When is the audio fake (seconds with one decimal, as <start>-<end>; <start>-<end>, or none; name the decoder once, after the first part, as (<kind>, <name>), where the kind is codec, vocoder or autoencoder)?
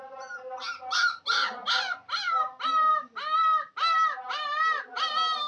none